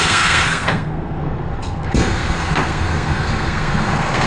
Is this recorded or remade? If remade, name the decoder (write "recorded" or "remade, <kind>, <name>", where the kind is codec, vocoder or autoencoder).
remade, codec, SNAC